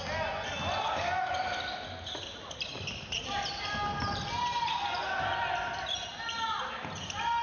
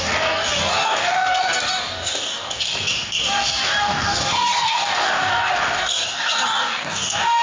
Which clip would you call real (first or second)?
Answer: first